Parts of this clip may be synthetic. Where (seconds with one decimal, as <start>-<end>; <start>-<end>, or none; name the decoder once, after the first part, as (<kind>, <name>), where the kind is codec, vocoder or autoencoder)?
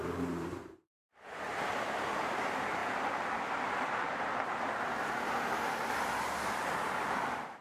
0.0-2.8 (vocoder, BigVGAN v2); 6.2-7.6